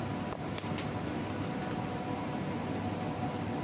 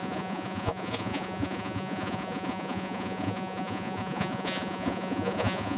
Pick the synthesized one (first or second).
second